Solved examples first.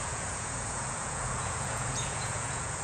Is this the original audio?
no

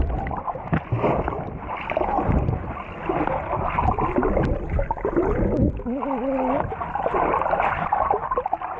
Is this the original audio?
yes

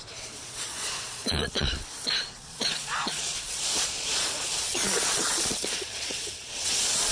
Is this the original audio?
no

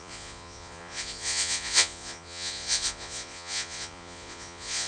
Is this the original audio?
no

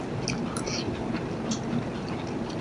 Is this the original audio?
yes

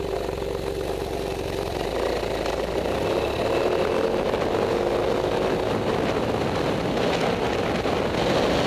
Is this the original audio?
yes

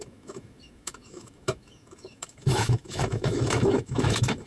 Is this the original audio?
no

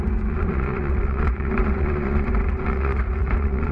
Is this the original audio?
no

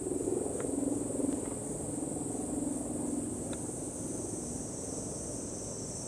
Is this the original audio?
yes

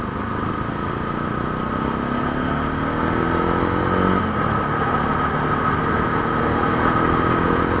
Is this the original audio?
yes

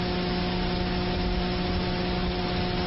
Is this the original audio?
yes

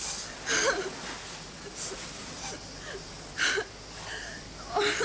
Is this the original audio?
yes